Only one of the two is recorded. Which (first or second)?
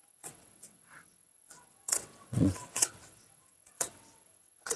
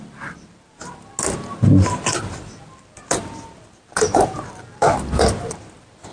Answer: second